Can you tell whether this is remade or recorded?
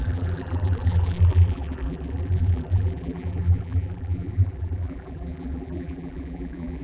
remade